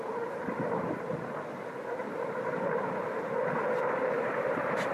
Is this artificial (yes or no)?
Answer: yes